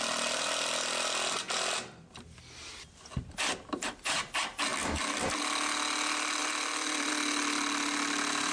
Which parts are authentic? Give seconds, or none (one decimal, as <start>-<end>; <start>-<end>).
0.0-4.7; 5.4-6.4; 7.1-8.5